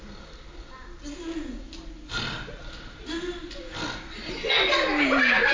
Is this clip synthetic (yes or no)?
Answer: no